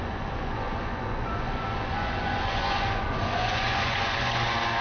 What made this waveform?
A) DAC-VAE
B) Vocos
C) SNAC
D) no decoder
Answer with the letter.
B